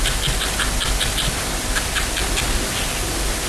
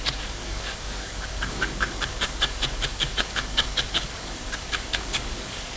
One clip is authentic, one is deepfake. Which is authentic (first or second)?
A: first